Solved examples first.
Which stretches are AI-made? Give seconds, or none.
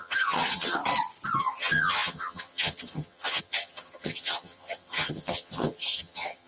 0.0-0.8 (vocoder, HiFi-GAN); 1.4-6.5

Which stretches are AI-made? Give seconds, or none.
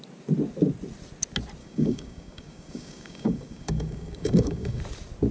1.6-4.8 (codec, DAC)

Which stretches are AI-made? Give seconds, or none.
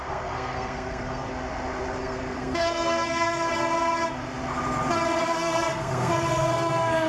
0.0-1.3 (codec, SNAC); 2.0-3.5; 5.2-7.1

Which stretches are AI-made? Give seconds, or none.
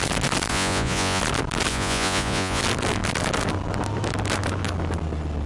0.5-1.2 (vocoder, Vocos); 1.7-2.6